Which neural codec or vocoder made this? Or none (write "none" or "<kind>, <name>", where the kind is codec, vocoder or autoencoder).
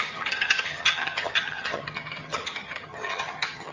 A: vocoder, HiFi-GAN